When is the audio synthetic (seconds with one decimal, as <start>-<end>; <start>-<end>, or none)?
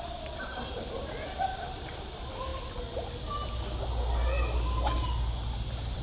none